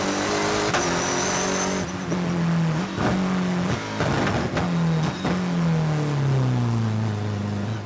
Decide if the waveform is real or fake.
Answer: real